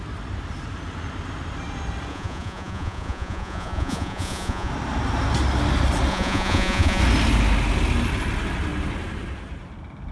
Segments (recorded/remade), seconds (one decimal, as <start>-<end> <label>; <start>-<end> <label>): 0.0-2.1 recorded; 2.1-4.7 remade; 4.7-6.1 recorded; 6.1-7.0 remade; 7.0-10.1 recorded